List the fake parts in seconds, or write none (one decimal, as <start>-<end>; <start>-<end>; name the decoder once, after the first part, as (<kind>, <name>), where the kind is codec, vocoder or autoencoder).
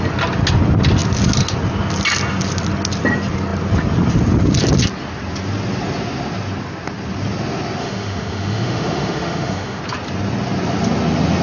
7.8-9.8 (autoencoder, DAC-VAE)